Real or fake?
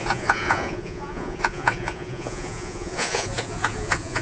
fake